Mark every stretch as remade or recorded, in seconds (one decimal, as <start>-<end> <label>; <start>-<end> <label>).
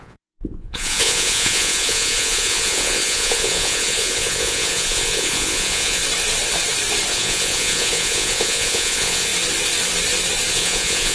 0.0-6.0 remade; 6.0-7.1 recorded; 7.1-9.3 remade; 9.3-10.5 recorded; 10.5-11.1 remade